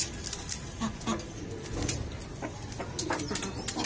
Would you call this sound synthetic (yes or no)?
no